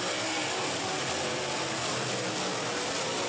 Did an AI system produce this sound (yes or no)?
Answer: no